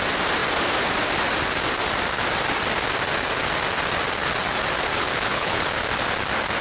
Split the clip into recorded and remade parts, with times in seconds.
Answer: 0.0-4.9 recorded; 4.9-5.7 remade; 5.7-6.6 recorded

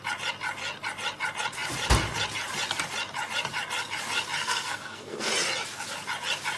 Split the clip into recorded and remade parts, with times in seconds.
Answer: 0.0-4.4 recorded; 4.4-5.3 remade; 5.3-6.6 recorded

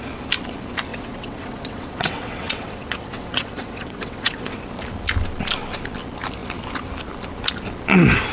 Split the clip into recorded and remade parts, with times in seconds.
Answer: 0.0-0.9 recorded; 0.9-4.6 remade; 4.6-8.3 recorded

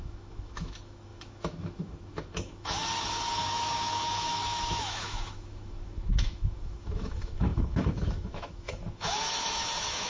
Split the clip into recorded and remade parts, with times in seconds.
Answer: 0.0-2.8 remade; 2.8-3.4 recorded; 3.4-10.1 remade

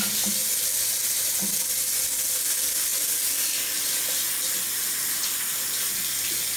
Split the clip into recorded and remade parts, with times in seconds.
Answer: 0.0-6.6 recorded

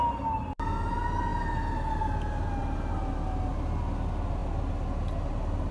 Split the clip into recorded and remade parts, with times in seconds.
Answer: 0.0-5.7 recorded

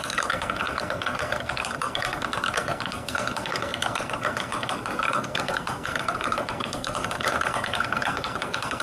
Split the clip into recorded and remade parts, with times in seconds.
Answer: 0.0-8.8 remade

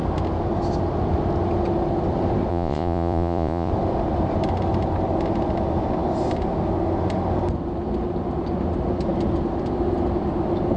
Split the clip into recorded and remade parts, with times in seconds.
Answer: 0.0-2.5 recorded; 2.5-3.7 remade; 3.7-10.8 recorded